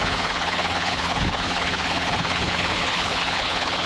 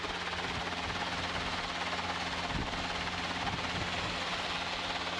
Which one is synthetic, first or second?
first